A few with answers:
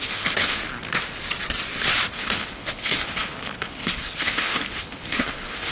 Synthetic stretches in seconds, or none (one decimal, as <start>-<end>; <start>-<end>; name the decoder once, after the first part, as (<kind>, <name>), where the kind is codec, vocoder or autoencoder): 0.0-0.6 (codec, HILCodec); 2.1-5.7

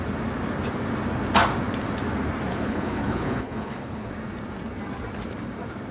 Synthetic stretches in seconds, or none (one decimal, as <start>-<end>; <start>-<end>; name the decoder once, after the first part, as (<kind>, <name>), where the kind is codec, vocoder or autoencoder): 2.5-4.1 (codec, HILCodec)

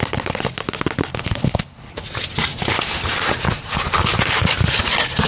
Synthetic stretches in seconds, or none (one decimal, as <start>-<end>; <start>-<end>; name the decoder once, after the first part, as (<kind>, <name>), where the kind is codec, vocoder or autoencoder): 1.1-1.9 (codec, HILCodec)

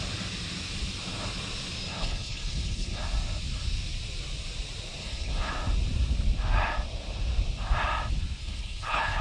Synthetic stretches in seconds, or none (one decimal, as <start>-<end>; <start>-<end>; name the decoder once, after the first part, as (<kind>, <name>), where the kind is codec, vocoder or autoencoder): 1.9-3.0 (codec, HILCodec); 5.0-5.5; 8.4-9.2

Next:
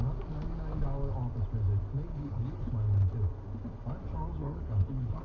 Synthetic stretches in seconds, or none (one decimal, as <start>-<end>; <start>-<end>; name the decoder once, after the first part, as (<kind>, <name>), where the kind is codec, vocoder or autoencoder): 2.1-2.7 (codec, HILCodec); 4.4-5.2

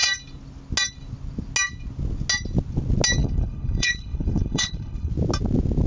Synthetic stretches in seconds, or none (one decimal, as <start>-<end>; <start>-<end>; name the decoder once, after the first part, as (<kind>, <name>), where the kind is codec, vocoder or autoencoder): 3.2-5.1 (codec, HILCodec)